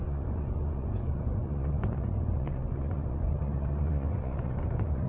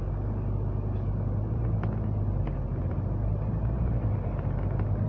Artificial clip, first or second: first